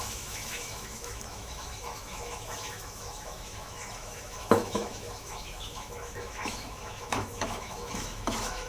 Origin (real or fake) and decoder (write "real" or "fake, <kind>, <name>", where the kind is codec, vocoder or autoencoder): fake, autoencoder, DAC-VAE